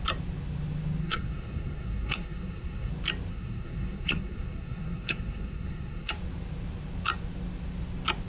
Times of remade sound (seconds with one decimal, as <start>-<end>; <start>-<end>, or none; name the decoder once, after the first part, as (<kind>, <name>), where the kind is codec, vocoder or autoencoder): 1.0-2.9 (codec, SNAC); 3.3-6.1